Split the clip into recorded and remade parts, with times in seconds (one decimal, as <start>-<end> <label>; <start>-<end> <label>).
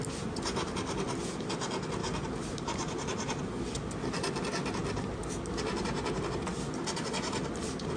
0.0-2.0 recorded; 2.0-3.4 remade; 3.4-8.0 recorded